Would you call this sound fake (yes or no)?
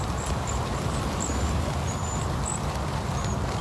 no